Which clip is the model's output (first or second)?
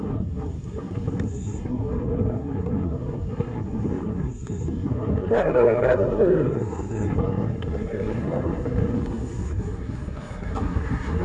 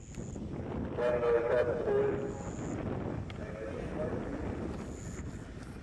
first